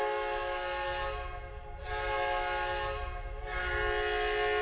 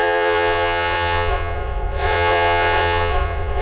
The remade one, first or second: second